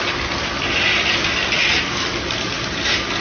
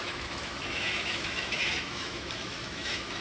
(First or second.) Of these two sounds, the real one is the first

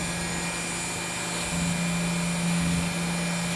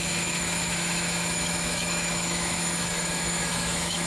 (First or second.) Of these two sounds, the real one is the first